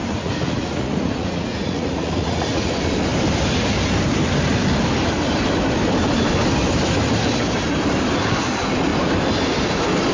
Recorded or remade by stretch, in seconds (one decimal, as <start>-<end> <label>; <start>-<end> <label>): 0.0-2.7 remade; 2.7-10.1 recorded